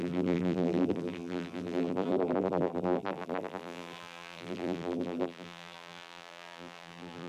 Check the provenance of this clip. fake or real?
fake